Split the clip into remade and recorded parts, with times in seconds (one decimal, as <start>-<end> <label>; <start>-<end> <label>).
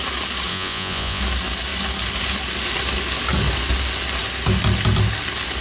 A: 0.0-0.5 recorded; 0.5-1.2 remade; 1.2-5.6 recorded